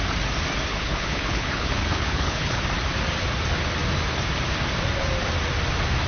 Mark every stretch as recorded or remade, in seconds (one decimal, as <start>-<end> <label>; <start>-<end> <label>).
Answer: 0.0-0.7 recorded; 0.7-2.6 remade; 2.6-6.1 recorded